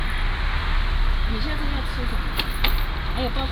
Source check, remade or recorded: recorded